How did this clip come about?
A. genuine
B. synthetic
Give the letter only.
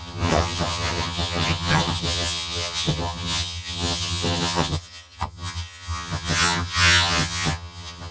B